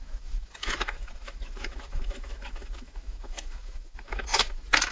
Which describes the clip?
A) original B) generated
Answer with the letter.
B